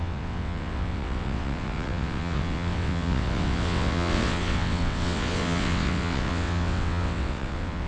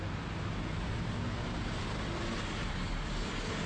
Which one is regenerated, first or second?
first